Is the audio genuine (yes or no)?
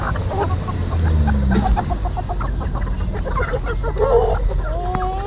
yes